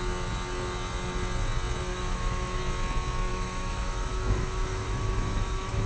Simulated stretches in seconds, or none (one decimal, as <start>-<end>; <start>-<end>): 1.9-2.6; 3.3-5.9